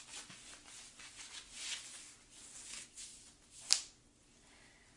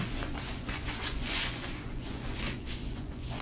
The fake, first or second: second